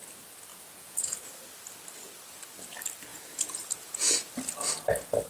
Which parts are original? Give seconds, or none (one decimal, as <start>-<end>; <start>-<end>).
0.0-0.5; 1.3-3.1; 4.3-5.3